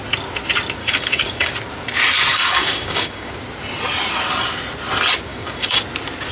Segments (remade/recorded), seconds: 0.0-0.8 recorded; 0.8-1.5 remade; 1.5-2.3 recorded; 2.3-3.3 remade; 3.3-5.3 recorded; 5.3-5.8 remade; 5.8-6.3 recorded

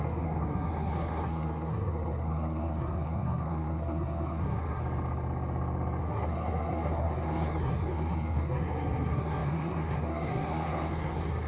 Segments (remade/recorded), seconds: 0.0-4.8 remade; 4.8-6.0 recorded; 6.0-11.5 remade

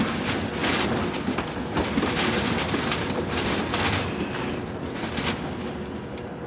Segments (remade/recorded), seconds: 0.0-6.5 recorded

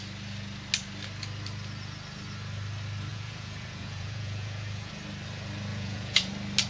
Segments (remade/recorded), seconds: 0.0-3.1 recorded; 3.1-4.9 remade; 4.9-5.7 recorded; 5.7-6.3 remade; 6.3-6.7 recorded

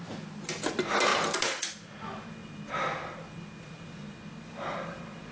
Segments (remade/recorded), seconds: 0.0-5.3 recorded